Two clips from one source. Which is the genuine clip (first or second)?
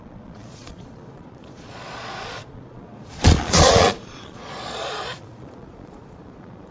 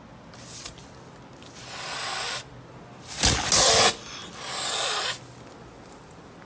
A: second